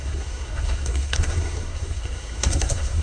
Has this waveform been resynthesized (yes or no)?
yes